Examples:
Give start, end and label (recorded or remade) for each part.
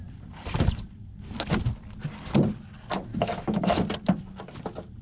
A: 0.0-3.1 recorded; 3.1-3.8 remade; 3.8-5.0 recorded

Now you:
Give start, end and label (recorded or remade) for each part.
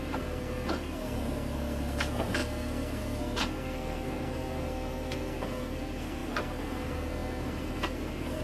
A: 0.0-8.4 remade